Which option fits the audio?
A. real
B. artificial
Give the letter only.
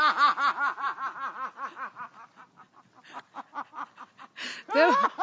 A